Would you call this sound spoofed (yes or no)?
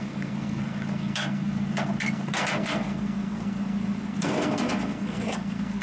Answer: yes